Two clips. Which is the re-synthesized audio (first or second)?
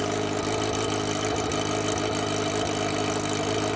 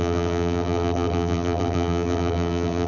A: second